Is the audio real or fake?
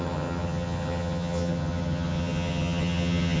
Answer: fake